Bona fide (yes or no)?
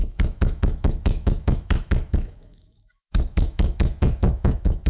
no